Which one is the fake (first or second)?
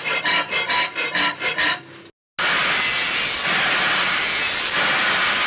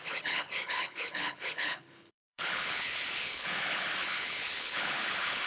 second